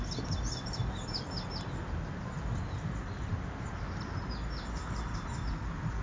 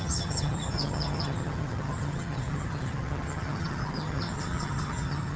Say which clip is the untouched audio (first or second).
first